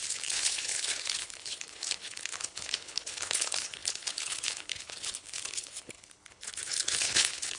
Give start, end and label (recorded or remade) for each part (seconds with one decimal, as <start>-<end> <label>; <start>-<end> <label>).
0.0-7.6 remade